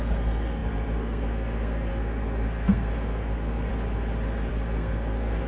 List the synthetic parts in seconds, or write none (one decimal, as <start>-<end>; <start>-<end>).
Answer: 0.0-3.7; 4.5-5.5